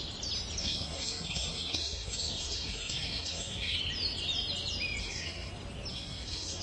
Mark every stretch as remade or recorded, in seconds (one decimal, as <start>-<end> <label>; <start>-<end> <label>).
0.0-0.6 recorded; 0.6-3.8 remade; 3.8-5.0 recorded; 5.0-5.5 remade; 5.5-5.9 recorded; 5.9-6.6 remade